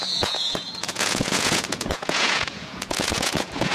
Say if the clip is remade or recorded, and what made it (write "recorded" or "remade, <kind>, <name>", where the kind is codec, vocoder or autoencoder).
remade, vocoder, Vocos